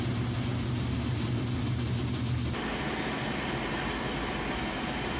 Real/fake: real